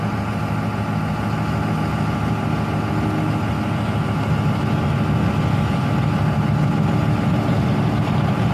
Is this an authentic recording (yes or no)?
yes